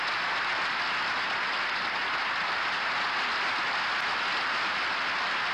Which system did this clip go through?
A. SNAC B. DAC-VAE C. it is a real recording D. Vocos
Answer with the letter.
C